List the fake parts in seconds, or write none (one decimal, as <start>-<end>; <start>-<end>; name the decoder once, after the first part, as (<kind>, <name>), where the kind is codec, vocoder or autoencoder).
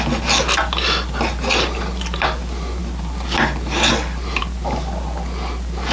none